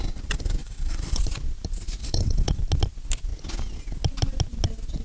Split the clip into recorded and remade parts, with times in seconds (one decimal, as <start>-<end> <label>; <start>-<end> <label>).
0.0-0.6 recorded; 0.6-1.2 remade; 1.2-2.0 recorded; 2.0-2.6 remade; 2.6-5.0 recorded